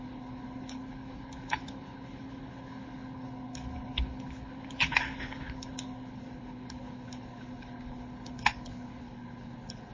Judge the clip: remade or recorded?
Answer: remade